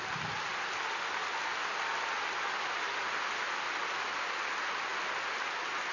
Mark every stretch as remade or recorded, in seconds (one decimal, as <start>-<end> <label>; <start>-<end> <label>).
0.0-5.9 recorded

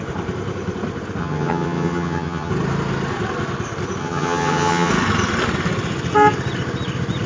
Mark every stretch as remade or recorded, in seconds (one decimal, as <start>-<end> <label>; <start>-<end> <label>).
0.0-1.2 recorded; 1.2-2.5 remade; 2.5-4.0 recorded; 4.0-4.9 remade; 4.9-7.3 recorded